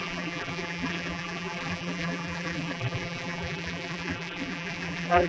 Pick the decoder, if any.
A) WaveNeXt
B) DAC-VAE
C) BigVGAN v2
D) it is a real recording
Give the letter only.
C